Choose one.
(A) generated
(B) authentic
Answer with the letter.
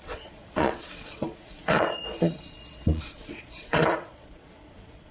A